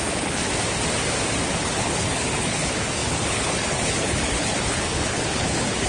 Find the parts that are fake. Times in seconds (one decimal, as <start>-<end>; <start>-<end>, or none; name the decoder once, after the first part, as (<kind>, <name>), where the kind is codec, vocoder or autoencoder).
0.0-0.4 (codec, HILCodec); 1.6-5.9